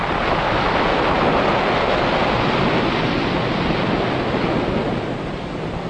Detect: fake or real real